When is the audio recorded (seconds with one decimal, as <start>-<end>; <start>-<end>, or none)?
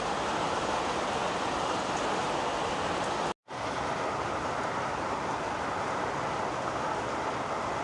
0.0-7.8